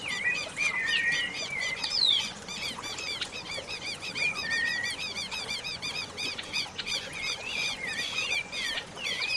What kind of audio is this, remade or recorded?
remade